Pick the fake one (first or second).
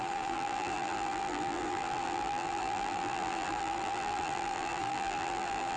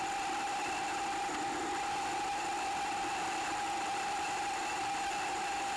first